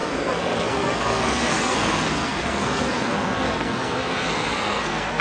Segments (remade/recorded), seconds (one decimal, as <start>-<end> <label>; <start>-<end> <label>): 0.0-5.2 remade